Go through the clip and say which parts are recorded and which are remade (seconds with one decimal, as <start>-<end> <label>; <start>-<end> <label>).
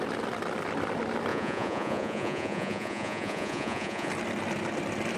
0.0-1.3 recorded; 1.3-4.1 remade; 4.1-5.2 recorded